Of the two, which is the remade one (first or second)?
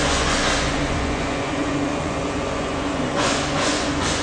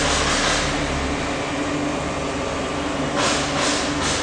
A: first